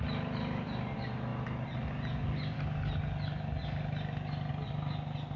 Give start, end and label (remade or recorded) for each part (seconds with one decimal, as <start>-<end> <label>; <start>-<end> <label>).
0.0-5.4 recorded